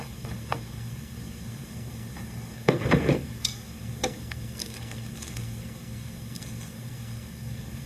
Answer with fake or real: fake